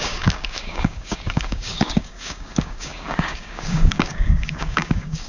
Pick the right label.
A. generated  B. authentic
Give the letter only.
A